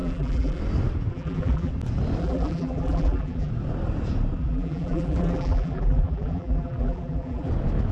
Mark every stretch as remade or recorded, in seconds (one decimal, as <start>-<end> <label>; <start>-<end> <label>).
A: 0.0-0.6 remade; 0.6-1.1 recorded; 1.1-1.7 remade; 1.7-2.2 recorded; 2.2-3.5 remade; 3.5-4.4 recorded; 4.4-7.5 remade; 7.5-7.9 recorded